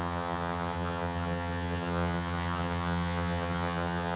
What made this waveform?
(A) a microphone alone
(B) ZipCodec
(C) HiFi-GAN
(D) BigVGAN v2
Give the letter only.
C